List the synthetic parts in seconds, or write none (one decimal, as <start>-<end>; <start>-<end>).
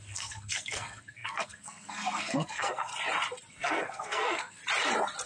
0.0-2.9; 3.5-4.6